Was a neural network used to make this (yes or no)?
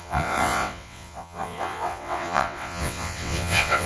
yes